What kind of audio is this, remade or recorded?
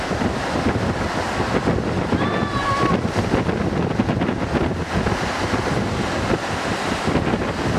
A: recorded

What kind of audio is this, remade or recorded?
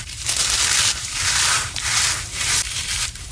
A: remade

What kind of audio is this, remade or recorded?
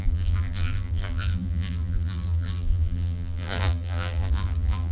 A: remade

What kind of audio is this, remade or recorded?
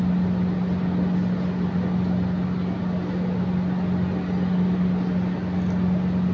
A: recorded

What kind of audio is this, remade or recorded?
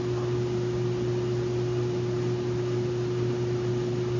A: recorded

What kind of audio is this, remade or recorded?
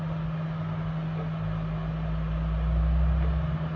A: recorded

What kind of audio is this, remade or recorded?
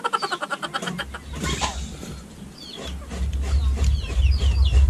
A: recorded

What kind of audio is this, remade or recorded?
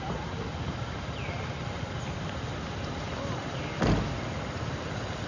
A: recorded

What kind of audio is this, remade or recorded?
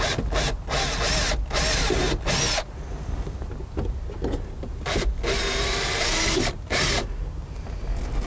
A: recorded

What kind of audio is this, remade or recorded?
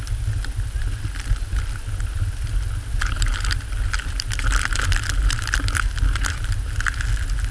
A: recorded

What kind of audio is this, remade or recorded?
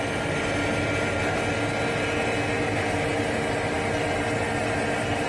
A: recorded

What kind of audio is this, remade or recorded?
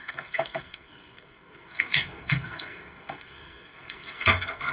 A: remade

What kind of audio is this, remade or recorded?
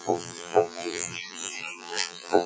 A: remade